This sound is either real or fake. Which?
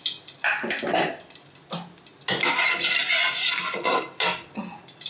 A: real